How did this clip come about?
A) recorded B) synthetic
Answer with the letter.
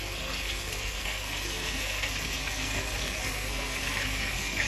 B